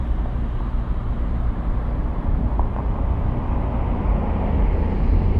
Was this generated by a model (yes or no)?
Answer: no